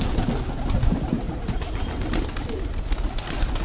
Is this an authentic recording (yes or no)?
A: yes